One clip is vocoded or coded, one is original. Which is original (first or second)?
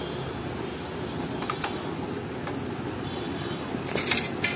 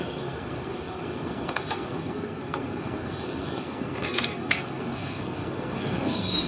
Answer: first